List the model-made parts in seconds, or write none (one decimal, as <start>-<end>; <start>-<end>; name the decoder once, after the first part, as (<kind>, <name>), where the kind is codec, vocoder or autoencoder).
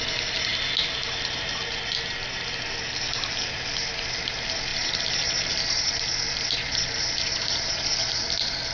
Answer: none